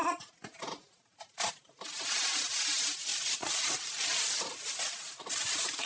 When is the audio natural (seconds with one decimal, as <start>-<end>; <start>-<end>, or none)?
0.0-3.1